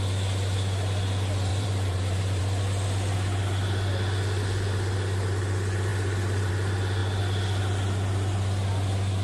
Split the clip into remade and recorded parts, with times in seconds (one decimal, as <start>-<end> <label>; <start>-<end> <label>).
0.0-1.5 recorded; 1.5-2.4 remade; 2.4-9.2 recorded